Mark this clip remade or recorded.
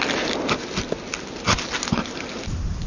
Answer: recorded